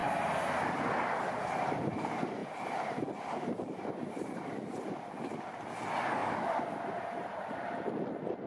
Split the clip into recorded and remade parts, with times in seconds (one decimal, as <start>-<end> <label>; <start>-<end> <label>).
0.0-0.9 remade; 0.9-2.4 recorded; 2.4-5.3 remade; 5.3-6.2 recorded; 6.2-7.9 remade; 7.9-8.5 recorded